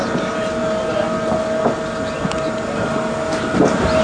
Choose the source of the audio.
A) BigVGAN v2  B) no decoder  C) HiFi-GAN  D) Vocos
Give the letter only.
B